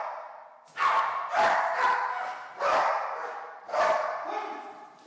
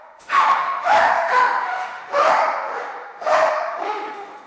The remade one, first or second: second